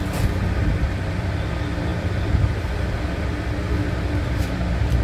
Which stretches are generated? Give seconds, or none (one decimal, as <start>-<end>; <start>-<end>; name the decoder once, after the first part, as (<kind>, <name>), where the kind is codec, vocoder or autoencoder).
none